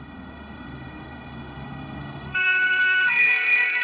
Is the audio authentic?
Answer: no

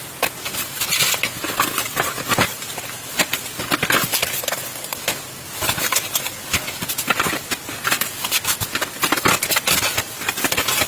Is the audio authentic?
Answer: yes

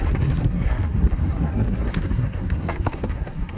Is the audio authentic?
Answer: no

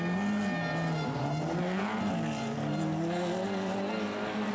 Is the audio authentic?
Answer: yes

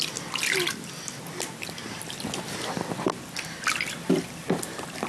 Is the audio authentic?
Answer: yes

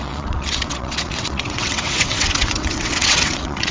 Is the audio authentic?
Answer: no